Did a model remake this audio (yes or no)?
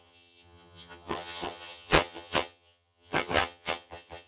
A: yes